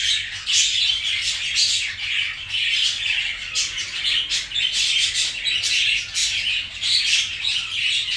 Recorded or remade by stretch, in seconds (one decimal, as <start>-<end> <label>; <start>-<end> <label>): 0.0-3.2 recorded; 3.2-4.0 remade; 4.0-6.2 recorded; 6.2-8.2 remade